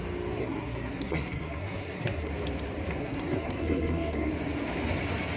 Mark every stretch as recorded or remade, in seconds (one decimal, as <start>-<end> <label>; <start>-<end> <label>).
0.0-0.4 recorded; 0.4-2.3 remade; 2.3-3.0 recorded; 3.0-4.3 remade; 4.3-5.4 recorded